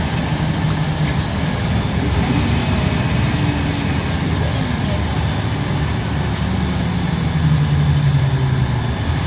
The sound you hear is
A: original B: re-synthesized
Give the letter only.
A